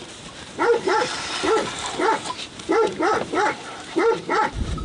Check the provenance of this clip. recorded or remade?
remade